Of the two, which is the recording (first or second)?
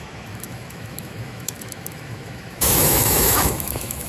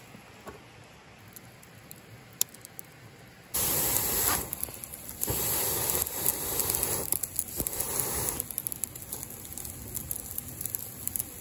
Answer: second